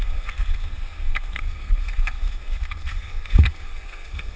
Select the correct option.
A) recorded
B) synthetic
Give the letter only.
B